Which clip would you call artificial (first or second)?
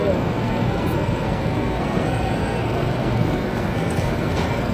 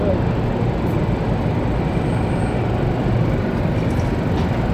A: first